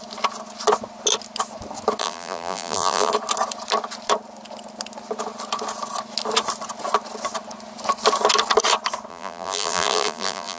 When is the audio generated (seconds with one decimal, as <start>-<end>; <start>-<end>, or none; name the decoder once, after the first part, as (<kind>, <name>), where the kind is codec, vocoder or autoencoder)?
2.0-3.1 (vocoder, BigVGAN v2); 9.1-10.6